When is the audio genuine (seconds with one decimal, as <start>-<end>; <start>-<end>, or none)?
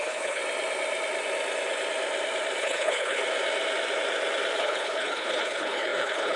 0.4-2.6; 3.2-4.6